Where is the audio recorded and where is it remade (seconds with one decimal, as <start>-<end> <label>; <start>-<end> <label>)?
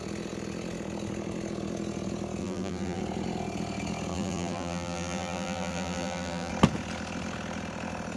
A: 0.0-2.4 recorded; 2.4-3.0 remade; 3.0-4.1 recorded; 4.1-6.5 remade; 6.5-8.2 recorded